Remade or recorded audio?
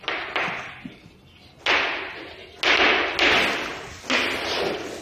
recorded